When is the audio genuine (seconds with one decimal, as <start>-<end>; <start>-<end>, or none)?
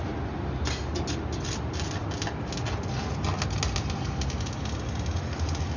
0.0-5.8